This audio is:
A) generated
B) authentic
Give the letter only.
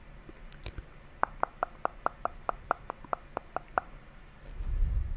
B